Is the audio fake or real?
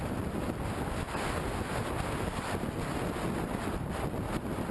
real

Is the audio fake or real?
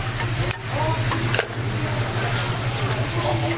real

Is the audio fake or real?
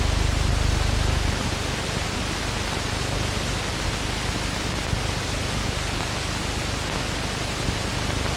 real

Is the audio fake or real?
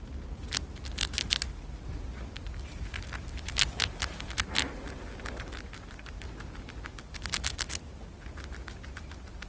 real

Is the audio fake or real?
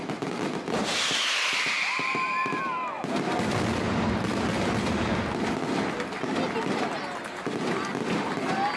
real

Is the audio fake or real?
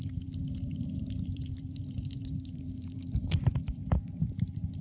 fake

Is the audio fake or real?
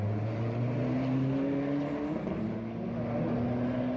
real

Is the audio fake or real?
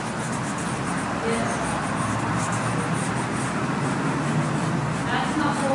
real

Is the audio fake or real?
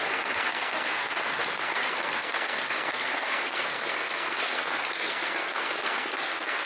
fake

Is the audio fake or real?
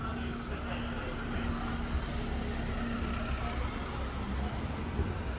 real